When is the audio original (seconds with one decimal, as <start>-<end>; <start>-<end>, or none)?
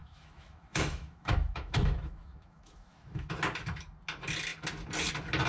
3.3-5.5